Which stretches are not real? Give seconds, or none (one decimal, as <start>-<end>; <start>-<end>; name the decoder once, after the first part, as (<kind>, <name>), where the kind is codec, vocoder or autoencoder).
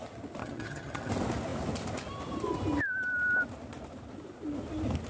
0.4-1.1 (vocoder, HiFi-GAN)